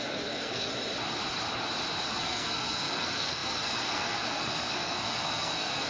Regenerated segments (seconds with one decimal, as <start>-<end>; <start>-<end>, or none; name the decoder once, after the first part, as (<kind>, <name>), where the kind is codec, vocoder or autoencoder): 0.0-0.7 (codec, SNAC); 2.1-5.9